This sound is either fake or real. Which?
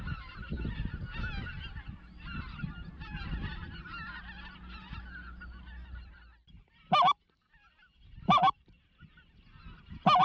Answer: real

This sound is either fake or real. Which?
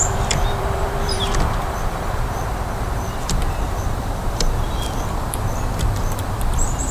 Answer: fake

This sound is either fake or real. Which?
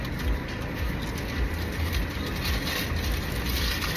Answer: real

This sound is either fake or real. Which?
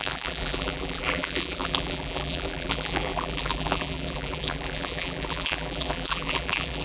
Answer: fake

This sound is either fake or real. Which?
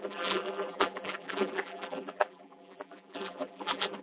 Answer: fake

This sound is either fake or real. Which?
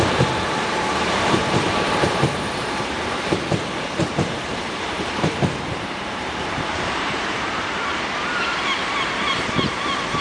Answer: fake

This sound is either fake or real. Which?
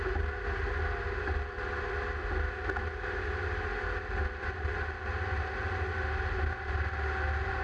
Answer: real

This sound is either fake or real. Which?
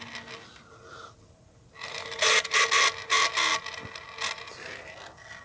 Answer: real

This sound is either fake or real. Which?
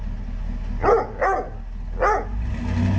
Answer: real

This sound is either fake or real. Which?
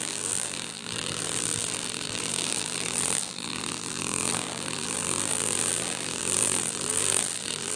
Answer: fake